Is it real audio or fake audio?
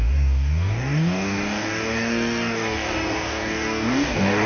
fake